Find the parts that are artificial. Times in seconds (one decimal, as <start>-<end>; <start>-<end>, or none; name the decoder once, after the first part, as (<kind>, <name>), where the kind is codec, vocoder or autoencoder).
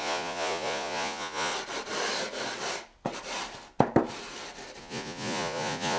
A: 0.0-1.5 (vocoder, Vocos); 4.8-6.0